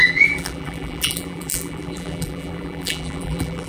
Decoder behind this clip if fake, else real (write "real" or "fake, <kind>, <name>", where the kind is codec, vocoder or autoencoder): fake, vocoder, BigVGAN v2